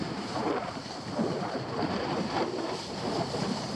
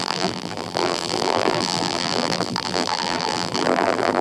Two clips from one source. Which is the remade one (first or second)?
second